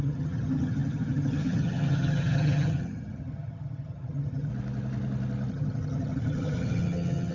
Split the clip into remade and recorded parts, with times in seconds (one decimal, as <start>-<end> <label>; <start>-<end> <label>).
0.0-4.5 remade; 4.5-5.5 recorded; 5.5-7.3 remade